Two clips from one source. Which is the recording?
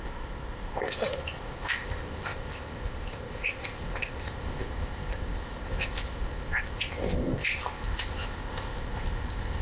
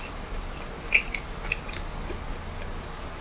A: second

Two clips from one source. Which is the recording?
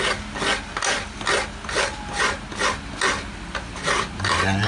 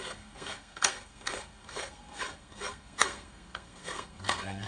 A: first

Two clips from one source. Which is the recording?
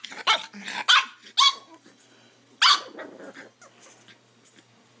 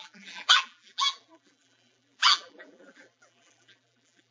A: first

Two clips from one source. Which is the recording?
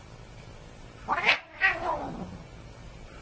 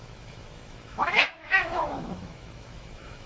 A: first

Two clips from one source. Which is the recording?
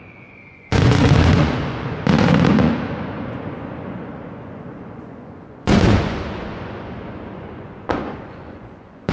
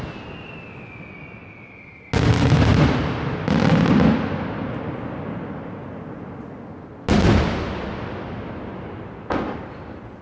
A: second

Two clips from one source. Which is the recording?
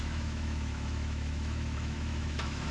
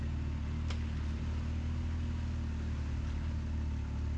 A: second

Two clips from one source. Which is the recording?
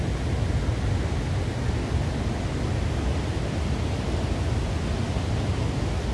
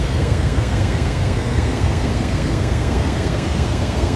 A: first